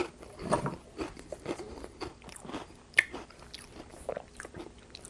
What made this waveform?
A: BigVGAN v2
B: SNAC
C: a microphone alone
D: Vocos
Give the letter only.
A